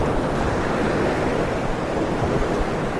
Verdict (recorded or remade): remade